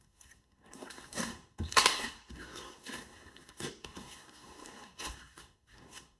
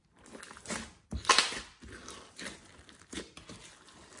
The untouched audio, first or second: second